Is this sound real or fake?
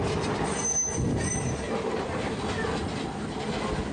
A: real